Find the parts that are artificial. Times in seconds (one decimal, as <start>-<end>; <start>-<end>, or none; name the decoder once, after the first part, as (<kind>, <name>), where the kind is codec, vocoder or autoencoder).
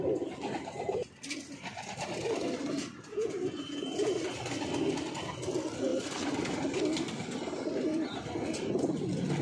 3.1-3.9 (vocoder, Vocos)